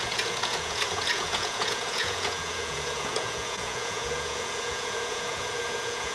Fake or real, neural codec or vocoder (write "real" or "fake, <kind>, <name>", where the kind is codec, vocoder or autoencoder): fake, vocoder, Vocos